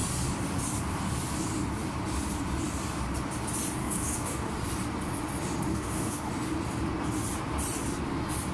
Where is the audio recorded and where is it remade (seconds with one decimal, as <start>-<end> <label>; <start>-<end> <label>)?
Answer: 0.0-3.8 recorded; 3.8-4.5 remade; 4.5-5.7 recorded; 5.7-6.3 remade; 6.3-8.5 recorded